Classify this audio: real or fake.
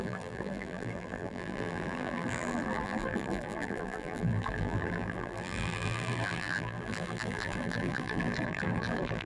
fake